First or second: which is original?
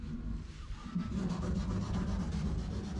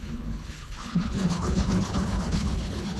first